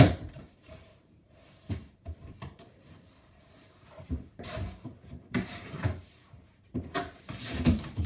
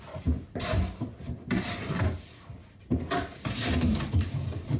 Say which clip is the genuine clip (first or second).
second